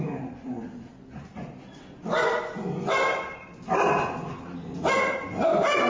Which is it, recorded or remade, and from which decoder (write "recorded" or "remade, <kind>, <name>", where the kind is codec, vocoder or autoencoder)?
recorded